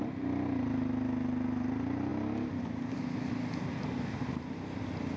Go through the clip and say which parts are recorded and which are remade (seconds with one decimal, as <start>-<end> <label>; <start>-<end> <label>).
0.0-5.2 recorded